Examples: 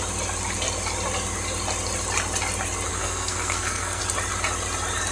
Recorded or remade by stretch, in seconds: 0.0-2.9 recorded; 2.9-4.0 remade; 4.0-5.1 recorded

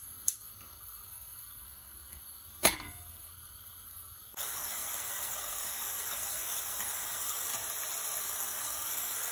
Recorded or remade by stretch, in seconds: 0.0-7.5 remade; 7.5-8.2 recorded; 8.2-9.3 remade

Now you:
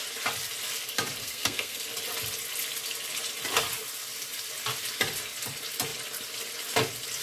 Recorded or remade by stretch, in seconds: 0.0-1.2 recorded; 1.2-1.8 remade; 1.8-7.2 recorded

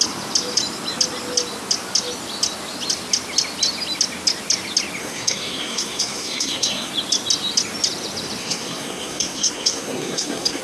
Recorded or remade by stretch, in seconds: 0.0-5.0 recorded; 5.0-6.9 remade; 6.9-8.4 recorded; 8.4-10.6 remade

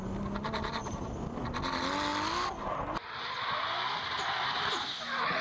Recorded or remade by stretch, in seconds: 0.0-5.4 recorded

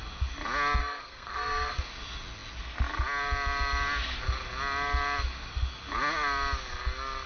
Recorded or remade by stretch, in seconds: 0.0-0.8 recorded; 0.8-1.8 remade; 1.8-7.3 recorded

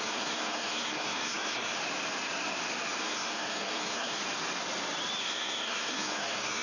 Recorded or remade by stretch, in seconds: 0.0-1.8 remade; 1.8-3.0 recorded; 3.0-4.2 remade; 4.2-5.2 recorded; 5.2-6.6 remade

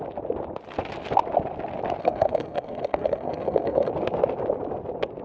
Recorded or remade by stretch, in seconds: 0.0-2.0 recorded; 2.0-3.9 remade; 3.9-5.2 recorded